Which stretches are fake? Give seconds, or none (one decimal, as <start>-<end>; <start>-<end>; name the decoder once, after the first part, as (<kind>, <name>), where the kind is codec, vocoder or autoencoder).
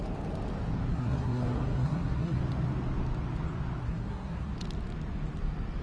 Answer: 0.9-2.4 (codec, SNAC); 3.8-4.5